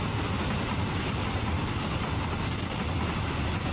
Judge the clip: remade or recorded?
recorded